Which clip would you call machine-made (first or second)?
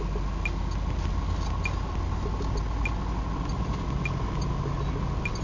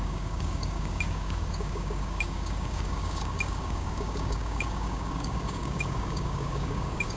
second